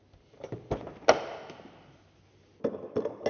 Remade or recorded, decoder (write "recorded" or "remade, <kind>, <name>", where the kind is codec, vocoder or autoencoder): recorded